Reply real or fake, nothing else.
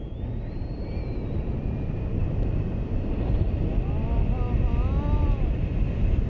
real